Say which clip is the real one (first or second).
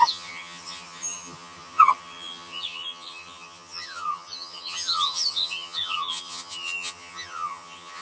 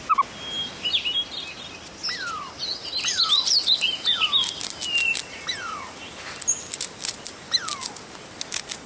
second